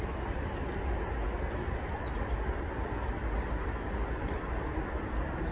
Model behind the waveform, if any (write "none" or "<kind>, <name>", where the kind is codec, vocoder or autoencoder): none